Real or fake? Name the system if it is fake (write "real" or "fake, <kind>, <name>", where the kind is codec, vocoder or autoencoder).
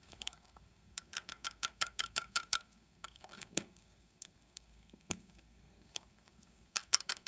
fake, codec, SNAC